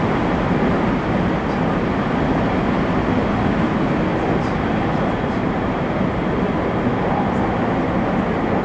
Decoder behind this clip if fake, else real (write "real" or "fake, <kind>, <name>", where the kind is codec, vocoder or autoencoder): real